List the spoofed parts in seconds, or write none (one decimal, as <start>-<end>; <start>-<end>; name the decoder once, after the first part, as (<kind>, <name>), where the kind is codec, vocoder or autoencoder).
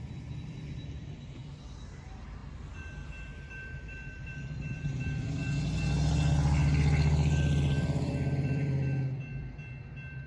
0.0-5.4 (vocoder, BigVGAN v2); 7.8-10.3